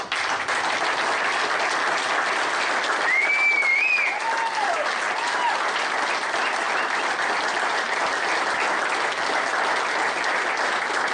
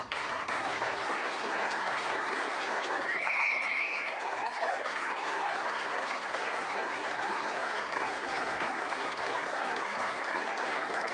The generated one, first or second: second